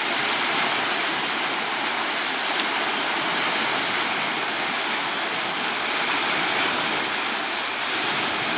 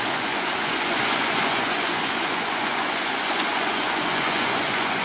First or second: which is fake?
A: second